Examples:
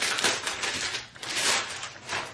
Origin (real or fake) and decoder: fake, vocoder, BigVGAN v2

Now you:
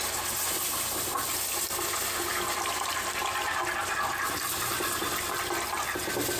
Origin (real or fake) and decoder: real